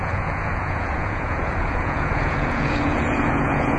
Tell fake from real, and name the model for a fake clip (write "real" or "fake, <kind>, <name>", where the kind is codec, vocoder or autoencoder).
fake, vocoder, Vocos